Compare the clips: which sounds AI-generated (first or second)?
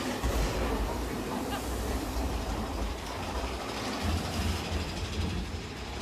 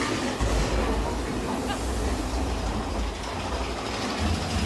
first